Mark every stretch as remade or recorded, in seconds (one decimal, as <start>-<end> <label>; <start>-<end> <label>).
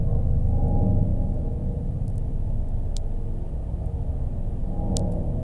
0.0-5.4 recorded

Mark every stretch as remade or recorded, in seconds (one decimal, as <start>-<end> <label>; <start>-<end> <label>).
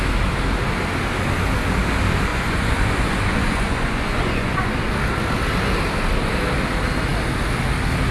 0.0-2.3 recorded; 2.3-4.7 remade; 4.7-8.1 recorded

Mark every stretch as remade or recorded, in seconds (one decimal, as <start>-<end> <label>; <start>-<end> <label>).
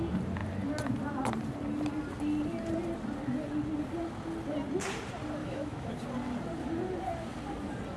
0.0-5.4 recorded; 5.4-5.9 remade; 5.9-8.0 recorded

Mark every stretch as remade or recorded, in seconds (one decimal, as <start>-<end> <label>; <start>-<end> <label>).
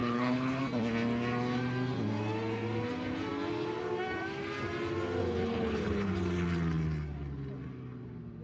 0.0-0.6 remade; 0.6-5.2 recorded; 5.2-6.1 remade; 6.1-8.4 recorded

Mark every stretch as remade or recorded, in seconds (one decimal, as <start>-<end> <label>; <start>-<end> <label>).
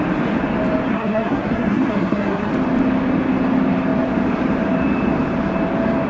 0.0-0.9 recorded; 0.9-2.5 remade; 2.5-6.1 recorded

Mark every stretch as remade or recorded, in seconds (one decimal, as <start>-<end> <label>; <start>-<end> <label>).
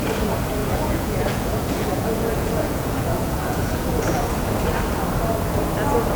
0.0-0.6 recorded; 0.6-4.3 remade; 4.3-6.2 recorded